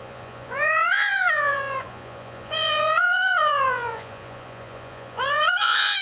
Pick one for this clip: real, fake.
fake